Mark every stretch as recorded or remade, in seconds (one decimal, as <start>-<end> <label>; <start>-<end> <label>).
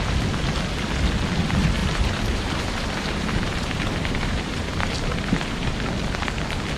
0.0-1.8 recorded; 1.8-5.8 remade; 5.8-6.8 recorded